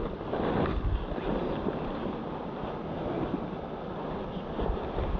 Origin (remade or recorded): recorded